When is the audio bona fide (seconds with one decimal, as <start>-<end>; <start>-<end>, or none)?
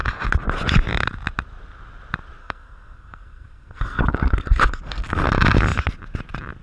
0.0-2.4; 5.3-6.6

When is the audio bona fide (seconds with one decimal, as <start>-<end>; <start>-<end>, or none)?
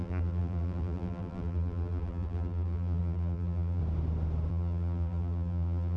3.8-4.5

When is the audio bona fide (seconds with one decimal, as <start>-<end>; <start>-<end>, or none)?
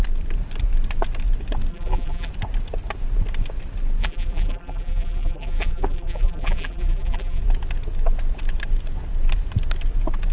0.0-1.7; 2.3-4.0; 7.4-10.3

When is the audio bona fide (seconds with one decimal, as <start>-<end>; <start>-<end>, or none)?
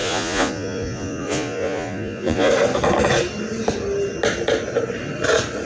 2.5-5.7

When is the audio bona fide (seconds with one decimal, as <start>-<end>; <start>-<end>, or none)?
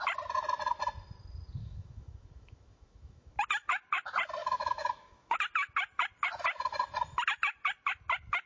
0.0-1.6; 3.3-4.4; 5.4-8.5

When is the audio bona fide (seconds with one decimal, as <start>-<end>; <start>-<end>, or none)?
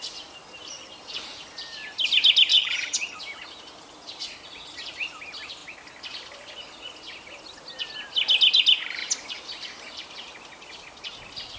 0.0-2.5; 3.2-11.6